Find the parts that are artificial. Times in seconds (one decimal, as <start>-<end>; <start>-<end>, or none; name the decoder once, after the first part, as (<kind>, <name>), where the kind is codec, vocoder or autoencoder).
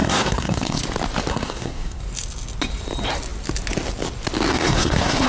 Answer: 0.0-0.8 (codec, SNAC); 1.3-2.0; 4.5-5.3